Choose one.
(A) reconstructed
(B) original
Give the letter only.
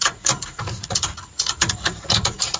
A